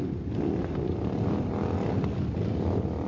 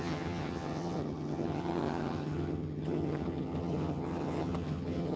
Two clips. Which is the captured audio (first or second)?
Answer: first